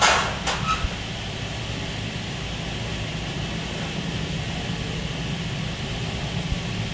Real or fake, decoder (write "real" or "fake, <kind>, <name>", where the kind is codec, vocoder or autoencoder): real